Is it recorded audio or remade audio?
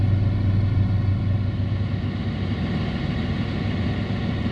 recorded